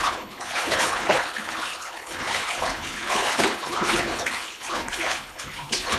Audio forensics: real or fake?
fake